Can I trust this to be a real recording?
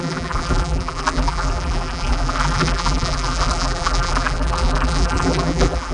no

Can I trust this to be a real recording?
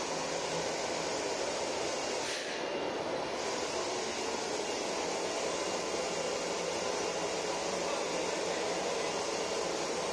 yes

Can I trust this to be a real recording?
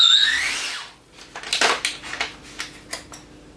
yes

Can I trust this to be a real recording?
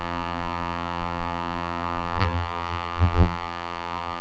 no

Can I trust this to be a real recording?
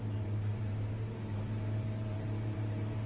no